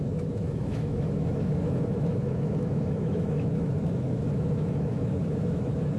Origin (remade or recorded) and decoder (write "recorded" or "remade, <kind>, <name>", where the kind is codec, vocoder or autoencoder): remade, autoencoder, DAC-VAE